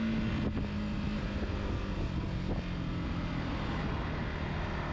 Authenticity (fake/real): real